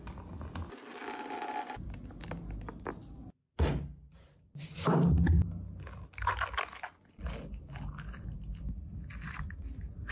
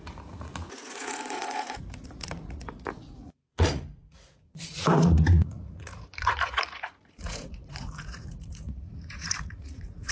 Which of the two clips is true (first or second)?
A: first